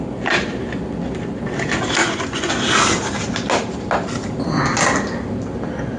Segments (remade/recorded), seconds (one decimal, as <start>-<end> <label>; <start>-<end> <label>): 0.0-2.0 recorded; 2.0-2.5 remade; 2.5-6.0 recorded